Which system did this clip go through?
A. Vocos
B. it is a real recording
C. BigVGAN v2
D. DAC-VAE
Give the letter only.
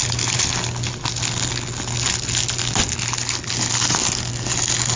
B